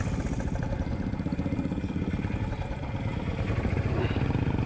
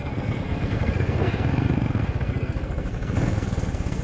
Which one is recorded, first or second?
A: first